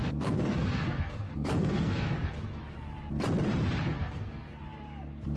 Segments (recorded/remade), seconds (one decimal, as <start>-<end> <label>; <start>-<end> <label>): 0.0-2.6 remade; 2.6-3.9 recorded; 3.9-4.6 remade; 4.6-5.4 recorded